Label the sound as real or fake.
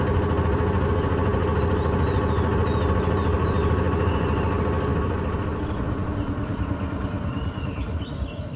real